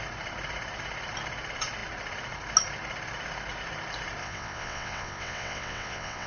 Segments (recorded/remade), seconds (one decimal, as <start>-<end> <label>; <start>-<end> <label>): 0.0-4.2 recorded; 4.2-6.3 remade

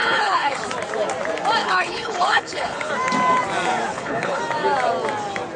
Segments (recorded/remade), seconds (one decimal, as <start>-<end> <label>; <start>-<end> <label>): 0.0-0.6 remade; 0.6-1.6 recorded; 1.6-2.9 remade; 2.9-3.9 recorded; 3.9-4.4 remade; 4.4-5.6 recorded

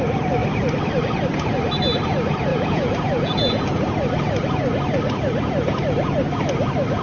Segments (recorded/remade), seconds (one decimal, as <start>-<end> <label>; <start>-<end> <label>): 0.0-2.5 recorded; 2.5-3.7 remade; 3.7-7.0 recorded

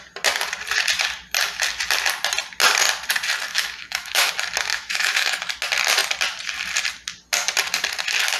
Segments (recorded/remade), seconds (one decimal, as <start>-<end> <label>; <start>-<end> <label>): 0.0-3.5 recorded; 3.5-4.3 remade; 4.3-4.7 recorded; 4.7-5.5 remade; 5.5-8.4 recorded